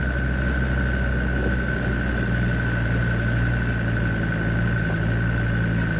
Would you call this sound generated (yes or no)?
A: no